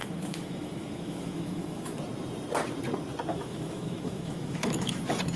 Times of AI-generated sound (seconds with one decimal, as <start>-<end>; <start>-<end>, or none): 0.0-2.0; 3.3-5.0